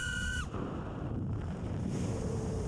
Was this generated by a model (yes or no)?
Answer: yes